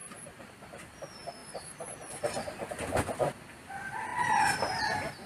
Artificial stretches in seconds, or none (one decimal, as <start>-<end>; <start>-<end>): 0.0-0.5; 1.4-2.8; 4.1-4.8